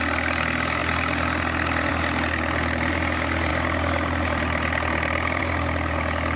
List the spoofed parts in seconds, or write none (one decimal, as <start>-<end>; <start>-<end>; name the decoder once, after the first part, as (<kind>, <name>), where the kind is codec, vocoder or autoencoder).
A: none